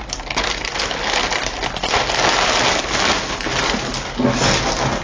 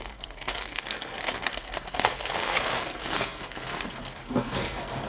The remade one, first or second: second